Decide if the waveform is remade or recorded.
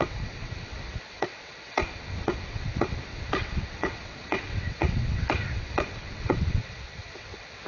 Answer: remade